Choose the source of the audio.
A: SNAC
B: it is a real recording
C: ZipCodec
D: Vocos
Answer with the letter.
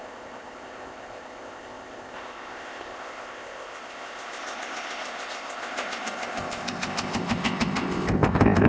C